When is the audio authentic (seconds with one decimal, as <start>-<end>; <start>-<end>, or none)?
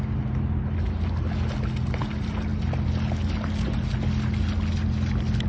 0.0-5.5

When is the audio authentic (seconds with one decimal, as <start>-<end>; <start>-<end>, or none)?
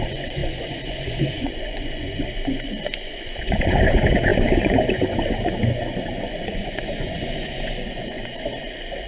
none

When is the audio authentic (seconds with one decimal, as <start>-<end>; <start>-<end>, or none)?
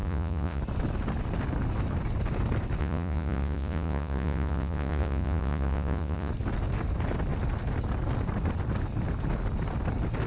0.6-2.8; 6.3-10.3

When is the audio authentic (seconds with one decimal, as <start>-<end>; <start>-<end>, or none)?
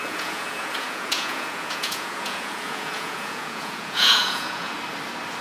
4.7-5.4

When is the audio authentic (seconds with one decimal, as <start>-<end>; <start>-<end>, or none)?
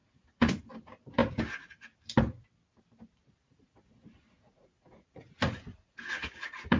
0.6-3.4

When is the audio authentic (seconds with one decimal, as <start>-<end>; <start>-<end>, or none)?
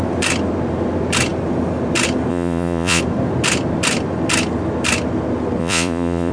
0.0-2.3; 3.0-5.6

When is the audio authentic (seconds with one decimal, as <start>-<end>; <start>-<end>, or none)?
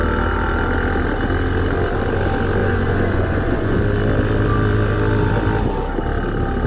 0.0-2.6; 3.8-6.7